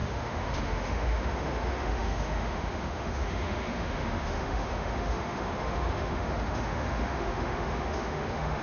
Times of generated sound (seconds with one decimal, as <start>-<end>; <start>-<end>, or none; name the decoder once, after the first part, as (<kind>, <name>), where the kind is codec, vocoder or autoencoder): 0.0-8.6 (autoencoder, DAC-VAE)

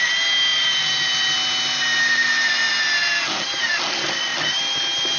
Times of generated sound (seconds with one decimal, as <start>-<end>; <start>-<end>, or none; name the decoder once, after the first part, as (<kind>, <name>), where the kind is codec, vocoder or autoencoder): none

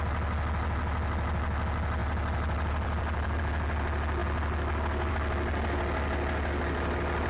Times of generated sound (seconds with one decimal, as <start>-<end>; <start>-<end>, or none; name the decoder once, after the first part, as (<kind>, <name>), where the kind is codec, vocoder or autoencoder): 2.0-3.4 (vocoder, BigVGAN v2)